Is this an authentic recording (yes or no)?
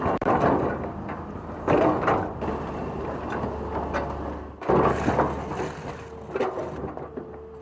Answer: yes